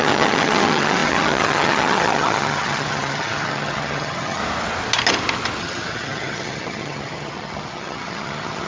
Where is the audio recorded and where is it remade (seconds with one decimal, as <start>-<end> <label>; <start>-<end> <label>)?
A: 0.0-4.4 remade; 4.4-5.6 recorded; 5.6-8.7 remade